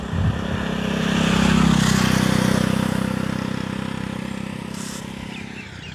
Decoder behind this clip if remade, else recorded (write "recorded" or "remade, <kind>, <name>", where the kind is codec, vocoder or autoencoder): recorded